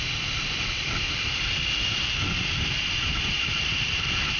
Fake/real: fake